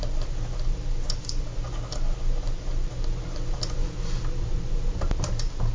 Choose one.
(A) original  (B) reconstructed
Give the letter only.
A